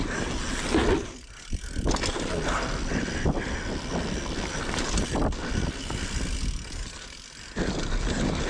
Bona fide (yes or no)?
yes